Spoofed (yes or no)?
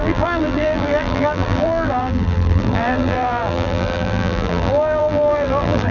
yes